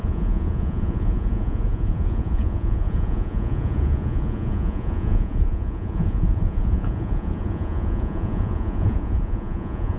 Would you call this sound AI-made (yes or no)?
yes